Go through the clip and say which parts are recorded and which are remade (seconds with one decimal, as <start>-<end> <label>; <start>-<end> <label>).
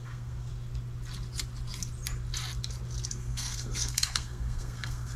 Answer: 0.0-0.5 remade; 0.5-3.1 recorded; 3.1-5.2 remade